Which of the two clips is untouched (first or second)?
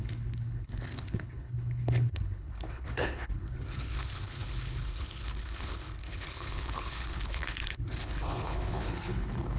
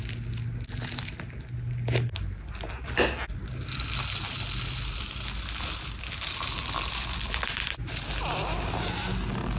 second